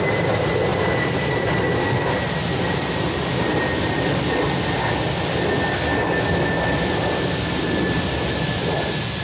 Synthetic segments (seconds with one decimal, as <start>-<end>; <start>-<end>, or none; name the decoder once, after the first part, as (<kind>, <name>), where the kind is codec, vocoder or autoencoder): none